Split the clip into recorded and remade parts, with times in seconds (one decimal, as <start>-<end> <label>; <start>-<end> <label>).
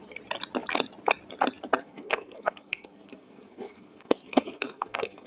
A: 0.0-1.8 recorded; 1.8-5.3 remade